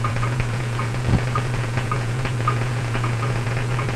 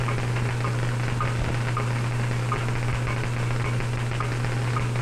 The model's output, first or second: first